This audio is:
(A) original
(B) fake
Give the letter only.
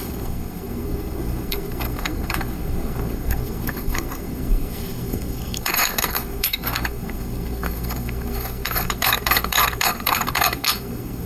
B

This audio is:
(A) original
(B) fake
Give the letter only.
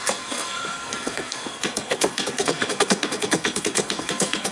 B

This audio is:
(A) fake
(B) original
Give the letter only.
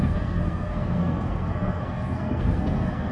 A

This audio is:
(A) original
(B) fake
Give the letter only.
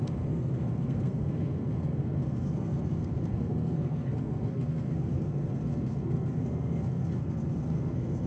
B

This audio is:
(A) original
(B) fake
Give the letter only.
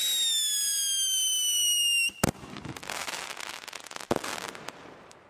A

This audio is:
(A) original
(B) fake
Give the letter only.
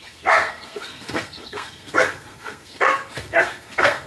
B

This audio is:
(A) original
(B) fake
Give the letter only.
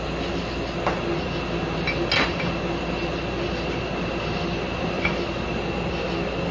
A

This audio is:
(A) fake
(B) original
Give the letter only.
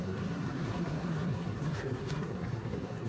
A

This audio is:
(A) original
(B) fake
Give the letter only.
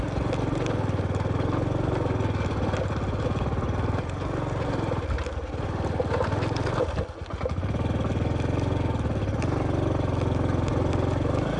A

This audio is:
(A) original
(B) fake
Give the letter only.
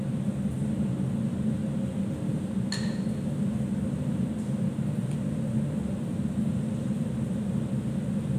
A